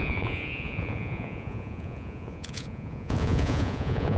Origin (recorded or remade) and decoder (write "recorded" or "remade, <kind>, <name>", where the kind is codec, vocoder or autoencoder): remade, vocoder, Vocos